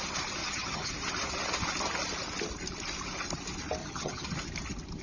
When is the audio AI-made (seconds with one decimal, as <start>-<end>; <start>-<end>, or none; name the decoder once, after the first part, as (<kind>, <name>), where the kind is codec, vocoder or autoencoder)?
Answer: 0.4-0.9 (vocoder, HiFi-GAN); 3.8-4.3